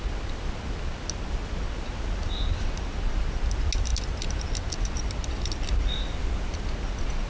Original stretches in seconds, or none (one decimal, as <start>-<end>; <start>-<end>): 0.0-7.3